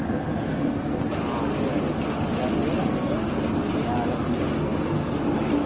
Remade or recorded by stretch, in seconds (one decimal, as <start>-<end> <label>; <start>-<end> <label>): 0.0-0.5 recorded; 0.5-1.0 remade; 1.0-2.8 recorded; 2.8-3.3 remade; 3.3-4.6 recorded; 4.6-5.2 remade; 5.2-5.7 recorded